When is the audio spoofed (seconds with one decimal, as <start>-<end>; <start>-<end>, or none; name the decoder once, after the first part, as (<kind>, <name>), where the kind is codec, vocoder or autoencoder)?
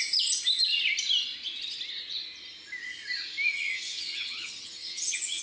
3.5-5.4 (vocoder, HiFi-GAN)